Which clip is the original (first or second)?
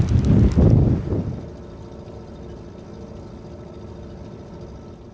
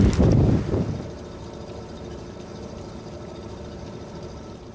first